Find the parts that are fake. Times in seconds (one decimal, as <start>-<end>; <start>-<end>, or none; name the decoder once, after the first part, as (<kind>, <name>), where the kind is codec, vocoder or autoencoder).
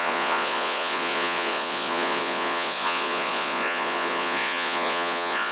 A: 0.0-5.5 (vocoder, Vocos)